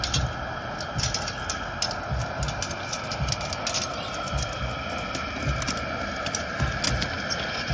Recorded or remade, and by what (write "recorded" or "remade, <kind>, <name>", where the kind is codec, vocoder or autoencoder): recorded